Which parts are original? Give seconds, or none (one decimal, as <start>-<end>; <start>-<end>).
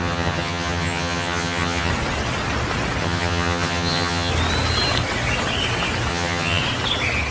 1.9-3.0; 4.3-6.1; 6.6-7.3